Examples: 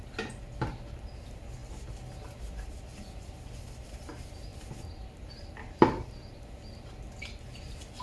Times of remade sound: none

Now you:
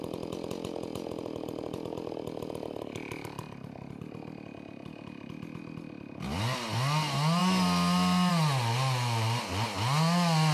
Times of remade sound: none

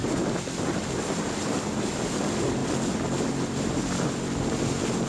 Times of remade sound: none

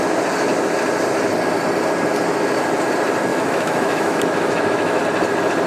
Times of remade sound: 3.3-5.0 (autoencoder, DAC-VAE)

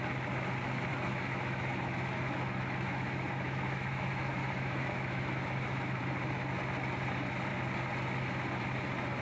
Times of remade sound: 0.9-6.0 (autoencoder, DAC-VAE)

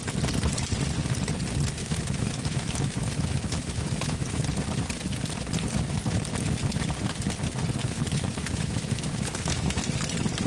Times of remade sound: 1.8-4.4 (autoencoder, DAC-VAE); 7.8-9.8

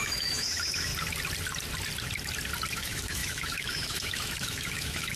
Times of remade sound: 0.0-0.9 (autoencoder, DAC-VAE); 2.7-5.2